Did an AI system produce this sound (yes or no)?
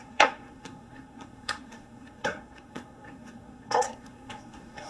yes